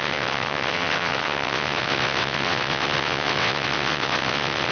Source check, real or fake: fake